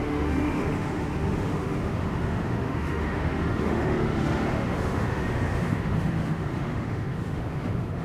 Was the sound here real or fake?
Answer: fake